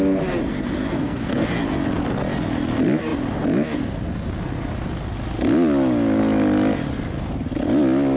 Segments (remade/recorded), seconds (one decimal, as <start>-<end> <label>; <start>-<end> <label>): 0.0-0.5 recorded; 0.5-1.5 remade; 1.5-8.2 recorded